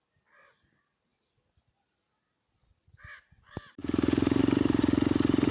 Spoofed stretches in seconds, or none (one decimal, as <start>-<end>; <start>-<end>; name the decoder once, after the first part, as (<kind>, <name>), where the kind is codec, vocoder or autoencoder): none